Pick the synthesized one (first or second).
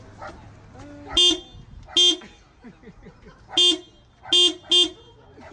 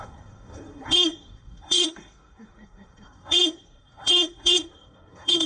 second